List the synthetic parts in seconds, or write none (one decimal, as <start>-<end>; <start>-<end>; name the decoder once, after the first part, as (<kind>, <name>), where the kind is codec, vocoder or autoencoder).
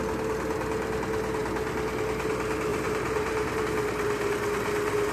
2.7-3.6 (vocoder, BigVGAN v2)